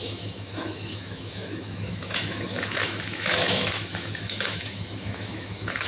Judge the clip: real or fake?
fake